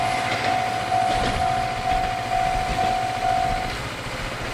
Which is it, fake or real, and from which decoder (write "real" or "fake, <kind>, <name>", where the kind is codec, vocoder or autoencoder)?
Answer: real